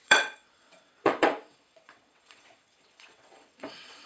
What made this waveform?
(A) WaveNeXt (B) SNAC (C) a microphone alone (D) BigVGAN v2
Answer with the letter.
A